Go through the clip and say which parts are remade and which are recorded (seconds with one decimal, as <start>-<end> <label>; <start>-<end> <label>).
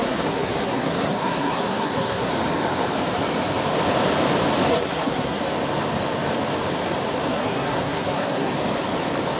0.0-2.3 remade; 2.3-4.7 recorded; 4.7-5.4 remade; 5.4-7.3 recorded; 7.3-8.5 remade; 8.5-9.4 recorded